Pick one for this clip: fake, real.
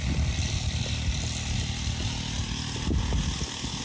real